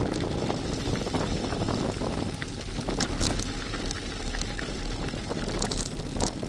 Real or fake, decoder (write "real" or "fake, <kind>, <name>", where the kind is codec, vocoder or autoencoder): real